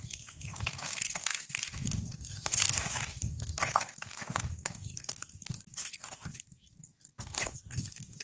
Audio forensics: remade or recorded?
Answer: remade